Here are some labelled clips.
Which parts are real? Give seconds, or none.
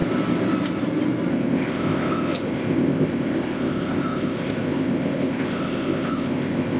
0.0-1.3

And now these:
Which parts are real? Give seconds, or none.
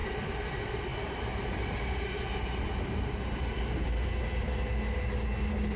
0.0-5.8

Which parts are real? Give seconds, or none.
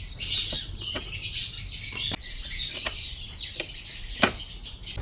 0.0-5.0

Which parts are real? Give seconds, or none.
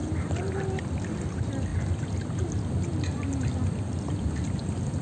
0.0-5.0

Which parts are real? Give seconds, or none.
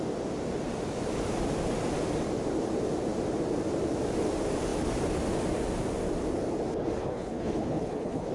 0.0-7.0